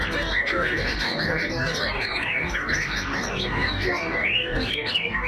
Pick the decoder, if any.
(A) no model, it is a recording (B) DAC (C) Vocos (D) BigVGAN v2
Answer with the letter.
B